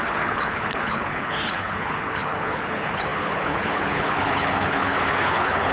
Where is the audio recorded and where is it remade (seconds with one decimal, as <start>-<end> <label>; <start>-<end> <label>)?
0.0-5.7 remade